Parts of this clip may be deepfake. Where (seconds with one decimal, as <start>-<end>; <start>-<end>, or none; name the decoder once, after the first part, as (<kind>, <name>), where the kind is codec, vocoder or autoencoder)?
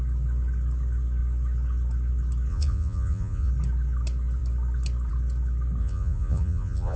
2.5-3.5 (vocoder, Vocos); 5.8-7.0